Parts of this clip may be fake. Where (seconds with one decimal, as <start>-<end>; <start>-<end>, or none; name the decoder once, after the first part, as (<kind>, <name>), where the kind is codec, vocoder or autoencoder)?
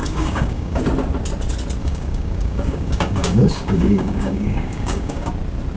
0.0-0.8 (codec, DAC); 1.8-5.3